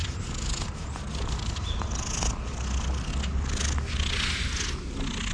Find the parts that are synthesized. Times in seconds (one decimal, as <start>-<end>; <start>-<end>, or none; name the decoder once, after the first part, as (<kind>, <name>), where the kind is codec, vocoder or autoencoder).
none